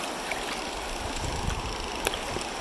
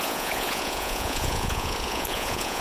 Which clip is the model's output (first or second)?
second